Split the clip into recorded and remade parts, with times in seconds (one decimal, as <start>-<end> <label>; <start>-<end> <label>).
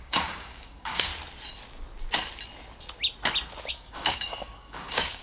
0.0-1.1 remade; 1.1-3.7 recorded; 3.7-5.2 remade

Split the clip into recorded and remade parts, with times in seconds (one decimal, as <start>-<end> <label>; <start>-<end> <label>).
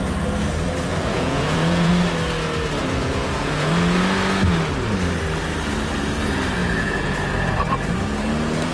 0.0-0.9 recorded; 0.9-1.9 remade; 1.9-2.8 recorded; 2.8-3.7 remade; 3.7-6.6 recorded; 6.6-7.3 remade; 7.3-8.7 recorded